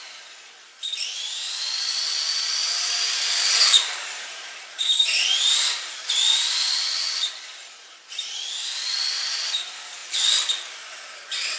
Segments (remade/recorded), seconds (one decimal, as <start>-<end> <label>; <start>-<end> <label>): 0.0-2.6 recorded; 2.6-6.8 remade; 6.8-7.6 recorded; 7.6-8.4 remade; 8.4-11.6 recorded